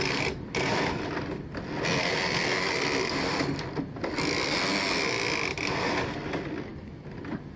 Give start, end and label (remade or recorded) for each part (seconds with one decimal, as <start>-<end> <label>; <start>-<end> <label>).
0.0-7.6 recorded